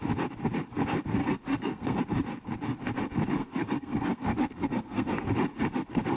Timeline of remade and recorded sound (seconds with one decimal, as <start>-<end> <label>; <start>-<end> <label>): 0.0-1.2 recorded; 1.2-2.0 remade; 2.0-3.4 recorded; 3.4-5.3 remade; 5.3-6.2 recorded

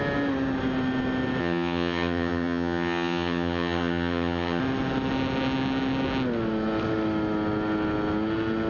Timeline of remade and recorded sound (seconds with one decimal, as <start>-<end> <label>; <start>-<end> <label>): 0.0-1.4 recorded; 1.4-4.6 remade; 4.6-8.7 recorded

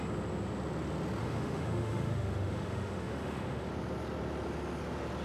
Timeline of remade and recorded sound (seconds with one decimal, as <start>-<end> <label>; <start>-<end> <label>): 0.0-1.2 recorded; 1.2-3.7 remade; 3.7-5.2 recorded